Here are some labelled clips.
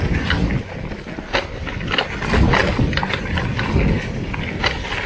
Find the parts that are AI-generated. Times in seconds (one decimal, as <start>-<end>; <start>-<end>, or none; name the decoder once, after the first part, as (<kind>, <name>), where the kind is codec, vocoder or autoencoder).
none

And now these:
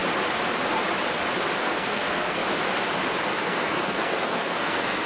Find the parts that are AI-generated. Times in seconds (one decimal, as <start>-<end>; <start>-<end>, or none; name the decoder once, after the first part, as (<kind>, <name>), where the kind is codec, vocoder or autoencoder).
1.6-2.4 (codec, SNAC); 3.3-5.1

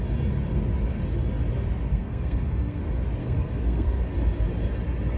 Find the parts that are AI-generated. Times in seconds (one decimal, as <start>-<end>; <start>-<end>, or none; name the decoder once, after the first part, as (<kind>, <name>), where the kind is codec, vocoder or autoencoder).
1.9-2.8 (codec, SNAC); 3.2-4.0

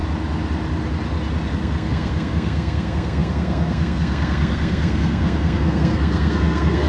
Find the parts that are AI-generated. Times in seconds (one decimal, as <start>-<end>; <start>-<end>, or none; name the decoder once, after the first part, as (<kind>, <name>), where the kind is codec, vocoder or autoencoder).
1.5-6.9 (codec, SNAC)

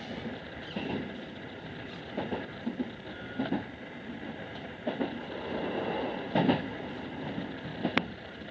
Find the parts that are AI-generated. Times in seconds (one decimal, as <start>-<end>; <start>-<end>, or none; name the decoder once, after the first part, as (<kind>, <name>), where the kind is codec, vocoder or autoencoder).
none